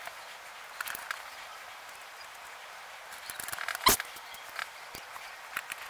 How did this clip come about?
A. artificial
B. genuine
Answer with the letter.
B